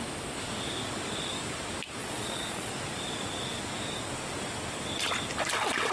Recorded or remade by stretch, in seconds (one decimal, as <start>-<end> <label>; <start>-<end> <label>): 0.0-2.0 recorded; 2.0-2.7 remade; 2.7-5.9 recorded